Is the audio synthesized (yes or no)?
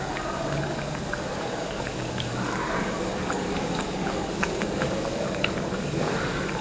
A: yes